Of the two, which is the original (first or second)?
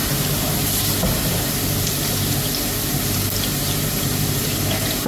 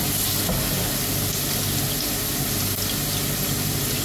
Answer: second